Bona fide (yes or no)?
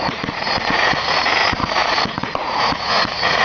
no